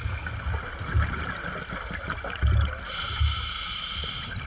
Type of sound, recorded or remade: recorded